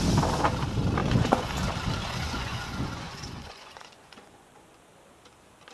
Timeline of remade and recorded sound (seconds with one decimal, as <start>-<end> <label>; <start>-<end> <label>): 0.0-1.0 recorded; 1.0-1.5 remade; 1.5-2.0 recorded; 2.0-4.8 remade; 4.8-5.7 recorded